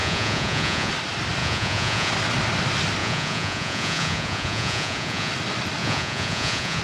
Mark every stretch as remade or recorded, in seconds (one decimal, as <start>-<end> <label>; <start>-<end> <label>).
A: 0.0-0.9 remade; 0.9-1.4 recorded; 1.4-2.1 remade; 2.1-3.0 recorded; 3.0-5.3 remade; 5.3-5.8 recorded; 5.8-6.8 remade